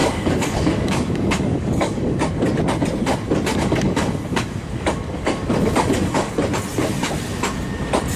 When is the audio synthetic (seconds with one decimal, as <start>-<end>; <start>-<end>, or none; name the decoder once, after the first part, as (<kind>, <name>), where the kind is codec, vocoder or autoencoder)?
0.0-2.3 (codec, DAC); 3.5-6.3